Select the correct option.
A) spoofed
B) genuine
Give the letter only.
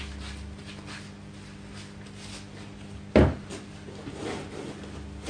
B